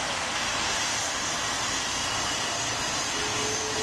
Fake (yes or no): no